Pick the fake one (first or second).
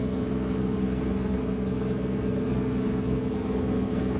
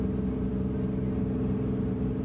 first